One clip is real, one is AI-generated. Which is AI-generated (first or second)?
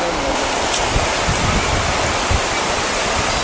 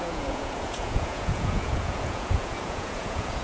second